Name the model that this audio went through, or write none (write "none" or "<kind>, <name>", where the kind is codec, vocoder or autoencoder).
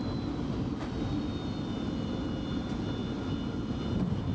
none